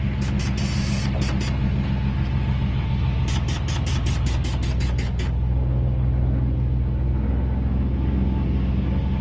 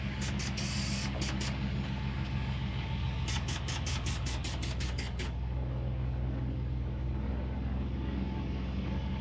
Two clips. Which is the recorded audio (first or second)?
first